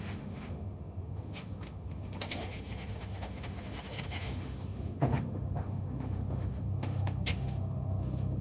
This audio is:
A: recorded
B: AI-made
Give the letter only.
B